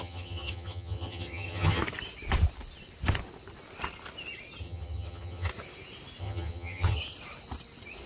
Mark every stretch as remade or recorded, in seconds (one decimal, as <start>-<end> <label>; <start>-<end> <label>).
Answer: 0.0-1.8 remade; 1.8-4.6 recorded; 4.6-5.5 remade; 5.5-6.2 recorded; 6.2-7.0 remade; 7.0-8.1 recorded